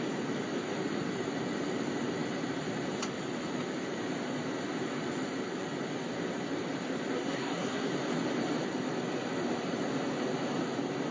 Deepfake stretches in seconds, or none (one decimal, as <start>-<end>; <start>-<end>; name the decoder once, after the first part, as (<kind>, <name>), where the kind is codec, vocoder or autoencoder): 7.1-7.9 (codec, SNAC)

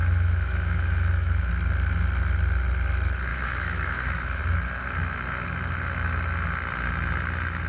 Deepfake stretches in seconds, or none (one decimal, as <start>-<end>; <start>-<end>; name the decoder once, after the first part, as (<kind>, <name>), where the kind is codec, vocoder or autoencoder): 0.0-1.5 (autoencoder, DAC-VAE); 3.3-4.4

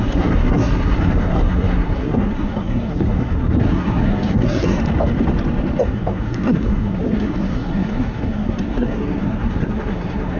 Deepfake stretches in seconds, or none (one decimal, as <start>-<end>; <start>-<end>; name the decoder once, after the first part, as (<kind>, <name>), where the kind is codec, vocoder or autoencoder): 0.0-4.8 (codec, SNAC); 5.8-10.4

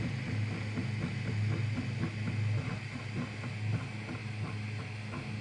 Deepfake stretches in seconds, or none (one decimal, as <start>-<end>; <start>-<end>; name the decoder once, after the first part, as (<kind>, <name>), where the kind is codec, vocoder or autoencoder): none

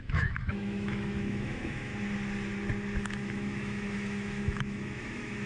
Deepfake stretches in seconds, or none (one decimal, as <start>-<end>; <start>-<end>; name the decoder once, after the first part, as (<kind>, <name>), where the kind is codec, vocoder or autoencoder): 0.0-1.9 (autoencoder, DAC-VAE); 3.0-5.5

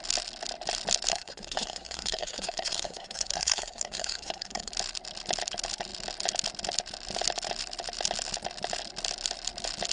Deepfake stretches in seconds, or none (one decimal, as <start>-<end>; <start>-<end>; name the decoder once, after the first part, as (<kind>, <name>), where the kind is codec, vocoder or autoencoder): 1.1-4.7 (codec, SNAC)

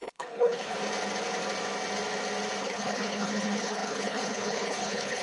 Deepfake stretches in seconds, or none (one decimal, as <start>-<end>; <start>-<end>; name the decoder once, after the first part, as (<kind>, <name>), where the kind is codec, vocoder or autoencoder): 0.0-0.8 (codec, HILCodec); 2.6-5.2